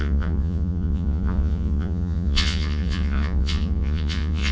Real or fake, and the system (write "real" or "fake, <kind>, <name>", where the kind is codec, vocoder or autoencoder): fake, vocoder, Vocos